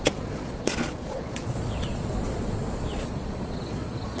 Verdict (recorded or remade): remade